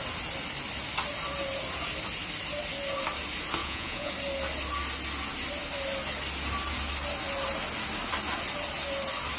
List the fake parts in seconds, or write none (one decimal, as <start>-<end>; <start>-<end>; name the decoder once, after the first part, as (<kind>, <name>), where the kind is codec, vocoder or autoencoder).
3.6-4.1 (vocoder, Vocos)